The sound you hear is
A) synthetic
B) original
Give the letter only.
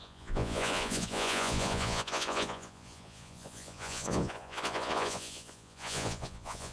A